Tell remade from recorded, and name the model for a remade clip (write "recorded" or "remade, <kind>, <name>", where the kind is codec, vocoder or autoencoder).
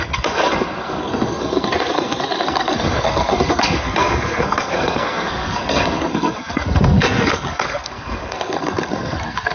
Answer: remade, codec, SNAC